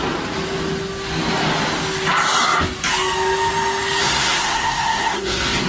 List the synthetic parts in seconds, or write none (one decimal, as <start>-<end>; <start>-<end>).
4.0-5.7